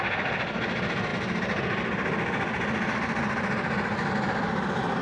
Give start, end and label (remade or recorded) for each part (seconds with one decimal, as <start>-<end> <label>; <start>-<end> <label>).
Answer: 0.0-5.0 recorded